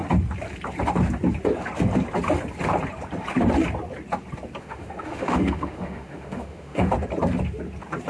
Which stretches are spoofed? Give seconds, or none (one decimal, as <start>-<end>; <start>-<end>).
4.6-6.9